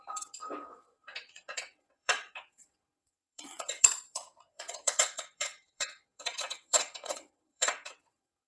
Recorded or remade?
remade